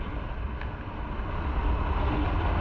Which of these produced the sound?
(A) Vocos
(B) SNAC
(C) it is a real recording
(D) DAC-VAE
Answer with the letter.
C